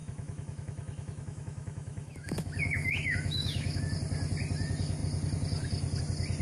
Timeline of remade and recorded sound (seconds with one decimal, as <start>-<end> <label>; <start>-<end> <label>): 0.0-3.8 remade; 3.8-6.4 recorded